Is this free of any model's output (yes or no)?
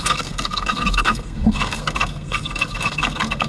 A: no